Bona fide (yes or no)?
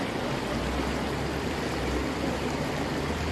yes